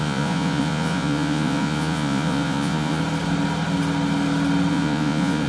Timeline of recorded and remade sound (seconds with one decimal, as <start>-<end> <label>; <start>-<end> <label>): 0.0-3.0 remade; 3.0-4.7 recorded; 4.7-5.5 remade